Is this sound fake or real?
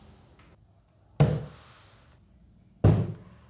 real